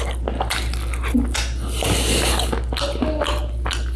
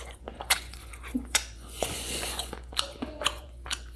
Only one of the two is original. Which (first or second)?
first